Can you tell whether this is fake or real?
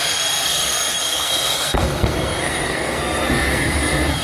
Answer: fake